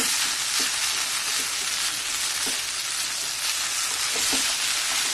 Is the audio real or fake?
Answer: real